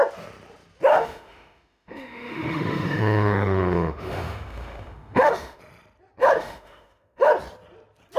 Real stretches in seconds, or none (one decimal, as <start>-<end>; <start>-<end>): 0.0-0.9; 5.6-6.2; 7.3-8.2